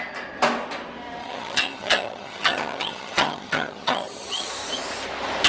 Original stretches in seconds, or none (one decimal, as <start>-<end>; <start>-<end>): 0.0-1.2; 4.5-5.5